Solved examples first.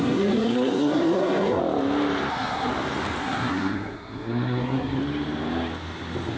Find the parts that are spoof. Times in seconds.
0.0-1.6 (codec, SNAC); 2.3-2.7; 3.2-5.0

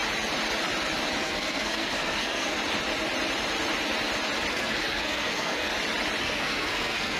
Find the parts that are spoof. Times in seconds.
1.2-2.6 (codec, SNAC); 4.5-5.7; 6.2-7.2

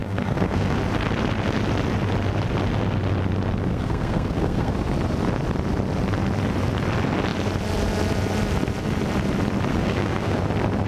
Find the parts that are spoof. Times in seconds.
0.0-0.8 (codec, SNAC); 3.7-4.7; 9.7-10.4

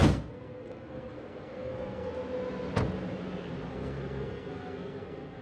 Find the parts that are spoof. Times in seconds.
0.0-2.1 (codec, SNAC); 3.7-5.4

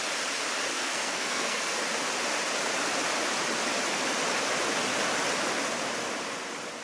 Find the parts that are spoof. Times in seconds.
0.7-1.8 (codec, SNAC)